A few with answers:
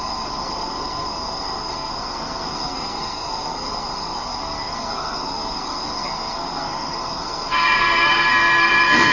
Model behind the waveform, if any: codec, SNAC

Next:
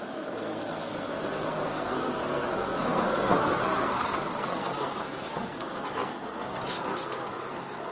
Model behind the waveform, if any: codec, SNAC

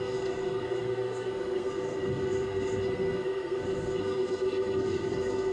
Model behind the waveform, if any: codec, SNAC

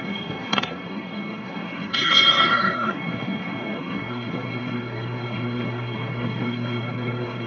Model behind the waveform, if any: codec, SNAC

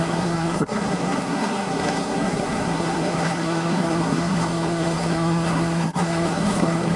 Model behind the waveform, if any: codec, SNAC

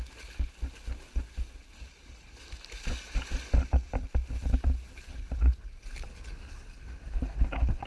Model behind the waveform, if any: none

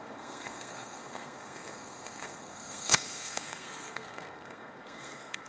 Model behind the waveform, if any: codec, SNAC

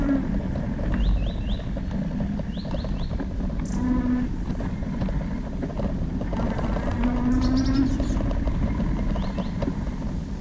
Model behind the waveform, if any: none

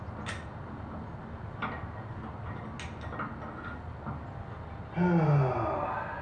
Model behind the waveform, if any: none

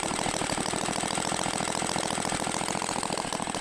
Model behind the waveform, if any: none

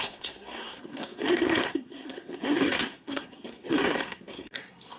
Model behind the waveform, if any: codec, SNAC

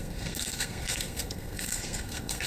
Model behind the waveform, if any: codec, SNAC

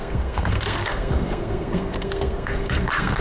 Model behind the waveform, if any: codec, SNAC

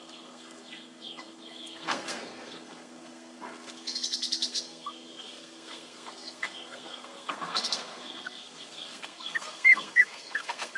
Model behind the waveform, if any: codec, SNAC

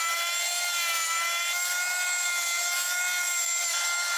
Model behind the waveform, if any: none